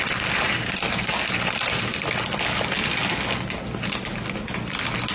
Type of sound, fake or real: real